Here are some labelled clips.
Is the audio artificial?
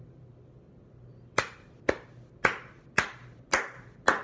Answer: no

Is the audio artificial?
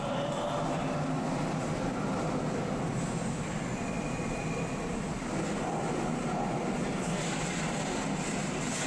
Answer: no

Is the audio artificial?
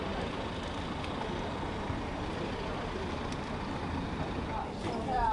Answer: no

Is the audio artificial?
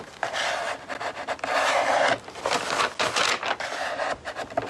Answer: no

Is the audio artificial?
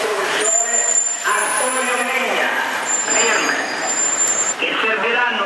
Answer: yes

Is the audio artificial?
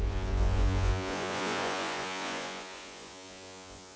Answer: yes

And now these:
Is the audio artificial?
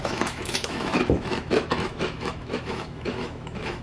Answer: yes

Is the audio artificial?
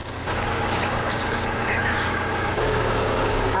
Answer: yes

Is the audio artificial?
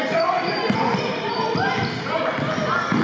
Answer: no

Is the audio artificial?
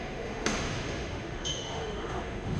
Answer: yes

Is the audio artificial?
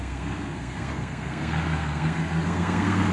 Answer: yes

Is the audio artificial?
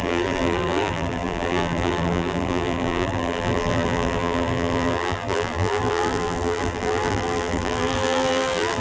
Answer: yes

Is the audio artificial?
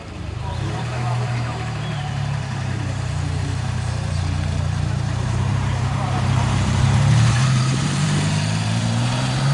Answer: yes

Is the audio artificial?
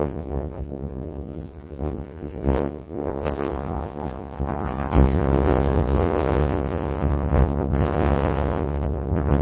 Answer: yes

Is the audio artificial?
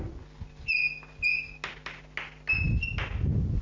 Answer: no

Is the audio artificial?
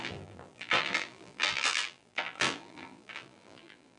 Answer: yes